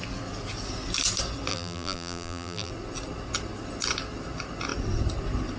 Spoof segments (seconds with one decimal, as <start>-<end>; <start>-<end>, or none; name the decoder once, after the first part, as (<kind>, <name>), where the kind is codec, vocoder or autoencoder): 1.5-2.7 (vocoder, BigVGAN v2)